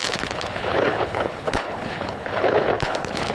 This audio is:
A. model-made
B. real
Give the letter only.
A